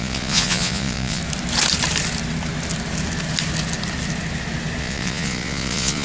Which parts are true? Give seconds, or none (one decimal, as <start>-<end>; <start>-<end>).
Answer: 1.2-4.8